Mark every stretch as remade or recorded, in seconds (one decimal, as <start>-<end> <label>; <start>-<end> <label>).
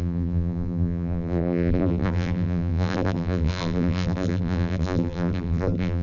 0.0-6.0 remade